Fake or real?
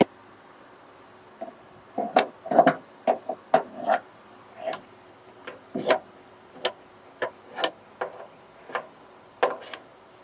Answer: real